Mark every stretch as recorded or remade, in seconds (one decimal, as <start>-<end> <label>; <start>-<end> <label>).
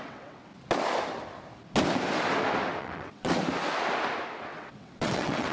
0.0-0.5 remade; 0.5-2.8 recorded; 2.8-3.3 remade; 3.3-4.5 recorded; 4.5-5.5 remade